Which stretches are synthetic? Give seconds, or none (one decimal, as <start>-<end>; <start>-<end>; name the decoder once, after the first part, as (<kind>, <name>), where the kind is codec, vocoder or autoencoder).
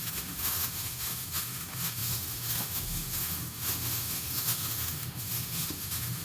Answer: 0.0-6.2 (autoencoder, DAC-VAE)